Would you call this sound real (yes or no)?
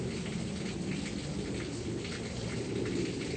yes